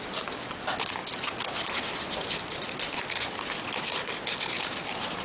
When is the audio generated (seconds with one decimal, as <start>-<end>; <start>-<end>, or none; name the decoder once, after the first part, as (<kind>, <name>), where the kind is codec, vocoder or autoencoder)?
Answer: none